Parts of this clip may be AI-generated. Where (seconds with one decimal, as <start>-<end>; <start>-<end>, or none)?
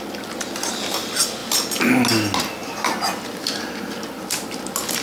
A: none